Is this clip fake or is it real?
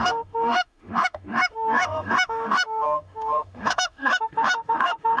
fake